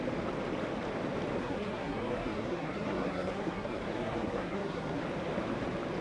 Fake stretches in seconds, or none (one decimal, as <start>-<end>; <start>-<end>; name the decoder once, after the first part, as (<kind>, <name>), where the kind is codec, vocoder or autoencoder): 1.4-5.0 (codec, SNAC)